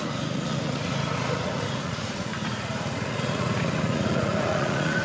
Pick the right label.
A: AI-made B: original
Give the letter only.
A